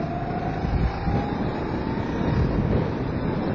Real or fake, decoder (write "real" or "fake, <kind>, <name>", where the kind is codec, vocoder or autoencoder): real